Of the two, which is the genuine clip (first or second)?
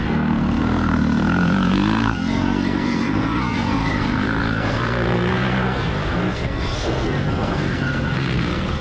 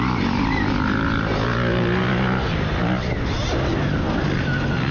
second